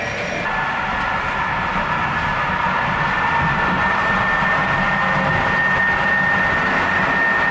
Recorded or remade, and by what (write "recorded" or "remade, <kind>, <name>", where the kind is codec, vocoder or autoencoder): recorded